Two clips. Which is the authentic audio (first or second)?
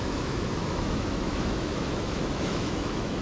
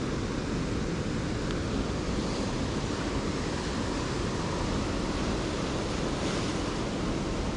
second